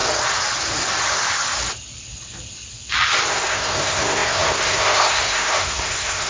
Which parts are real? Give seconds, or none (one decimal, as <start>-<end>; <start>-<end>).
0.0-3.3